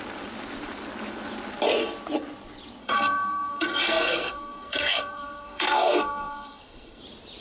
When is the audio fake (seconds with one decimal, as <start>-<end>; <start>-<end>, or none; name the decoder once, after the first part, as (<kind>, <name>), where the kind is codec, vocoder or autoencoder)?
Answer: 2.8-7.0 (codec, SNAC)